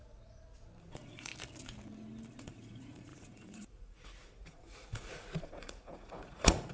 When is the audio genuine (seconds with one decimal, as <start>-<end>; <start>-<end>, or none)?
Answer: 0.0-0.8; 1.3-2.4